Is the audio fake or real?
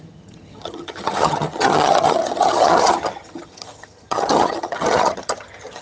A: fake